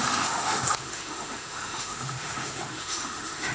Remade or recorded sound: remade